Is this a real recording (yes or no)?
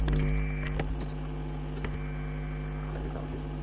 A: yes